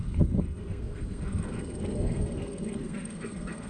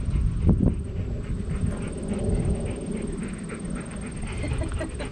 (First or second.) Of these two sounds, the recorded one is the second